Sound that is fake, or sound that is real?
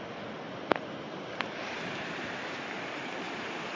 real